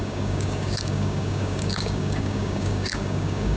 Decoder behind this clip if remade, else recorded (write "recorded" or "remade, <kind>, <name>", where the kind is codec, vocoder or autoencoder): remade, codec, DAC